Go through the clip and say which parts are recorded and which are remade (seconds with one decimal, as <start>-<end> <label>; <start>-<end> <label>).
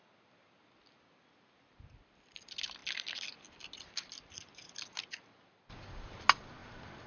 0.0-7.1 recorded